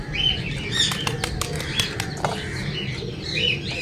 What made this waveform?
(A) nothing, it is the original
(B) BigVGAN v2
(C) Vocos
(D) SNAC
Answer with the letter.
A